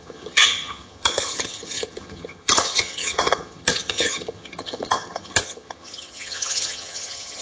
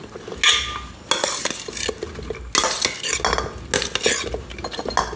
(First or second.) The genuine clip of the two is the second